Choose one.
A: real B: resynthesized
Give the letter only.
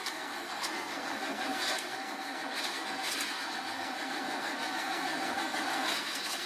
B